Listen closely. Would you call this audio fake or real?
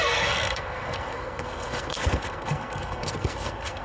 fake